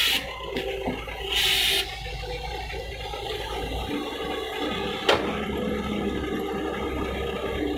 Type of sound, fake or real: real